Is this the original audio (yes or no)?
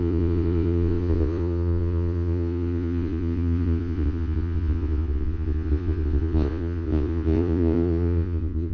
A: no